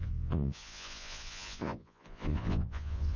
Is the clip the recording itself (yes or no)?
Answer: no